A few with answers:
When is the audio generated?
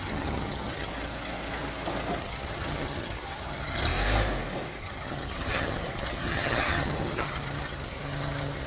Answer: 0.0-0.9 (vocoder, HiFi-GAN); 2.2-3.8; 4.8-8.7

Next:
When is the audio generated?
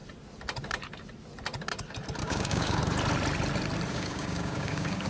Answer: 2.2-2.8 (codec, DAC); 3.9-5.1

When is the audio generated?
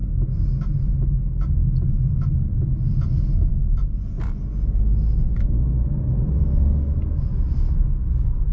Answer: 5.3-6.3 (codec, DAC)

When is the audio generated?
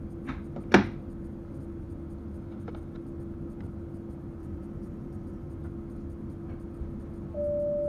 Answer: 4.4-5.5 (vocoder, BigVGAN v2)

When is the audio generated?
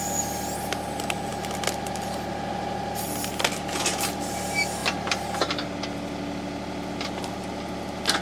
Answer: none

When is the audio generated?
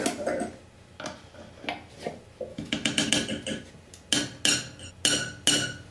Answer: 2.5-3.1 (autoencoder, DAC-VAE)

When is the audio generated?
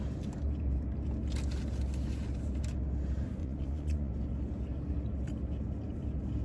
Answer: 3.4-4.1 (vocoder, Vocos)